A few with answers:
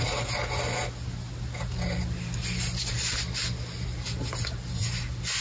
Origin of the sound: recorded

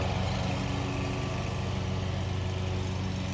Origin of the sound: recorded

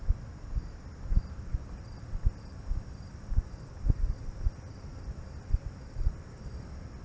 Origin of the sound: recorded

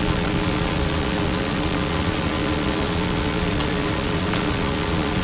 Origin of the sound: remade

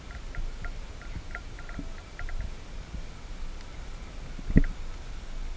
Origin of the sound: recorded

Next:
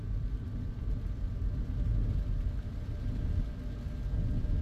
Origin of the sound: recorded